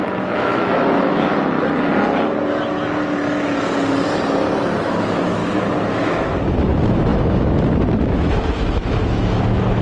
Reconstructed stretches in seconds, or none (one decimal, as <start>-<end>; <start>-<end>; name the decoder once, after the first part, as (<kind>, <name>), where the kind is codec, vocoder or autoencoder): 0.0-1.3 (autoencoder, DAC-VAE); 4.8-5.4; 5.9-9.8